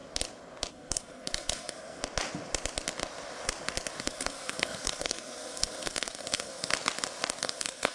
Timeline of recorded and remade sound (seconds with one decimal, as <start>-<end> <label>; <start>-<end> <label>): 0.0-0.7 recorded; 0.7-2.0 remade; 2.0-4.0 recorded; 4.0-6.7 remade; 6.7-7.4 recorded; 7.4-7.9 remade

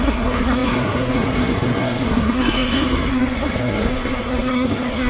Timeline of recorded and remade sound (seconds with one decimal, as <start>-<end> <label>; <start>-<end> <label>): 0.0-5.1 remade

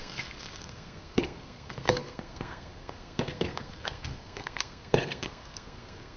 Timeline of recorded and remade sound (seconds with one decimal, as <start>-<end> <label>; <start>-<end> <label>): 0.0-6.2 remade

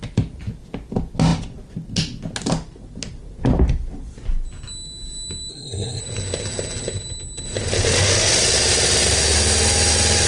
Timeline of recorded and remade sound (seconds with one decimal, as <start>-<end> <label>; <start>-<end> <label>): 0.0-5.5 recorded; 5.5-6.0 remade; 6.0-10.3 recorded

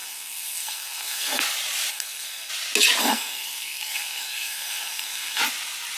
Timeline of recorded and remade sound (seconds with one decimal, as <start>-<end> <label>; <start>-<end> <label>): 0.0-1.4 remade; 1.4-1.9 recorded; 1.9-2.5 remade; 2.5-3.0 recorded; 3.0-5.4 remade; 5.4-6.0 recorded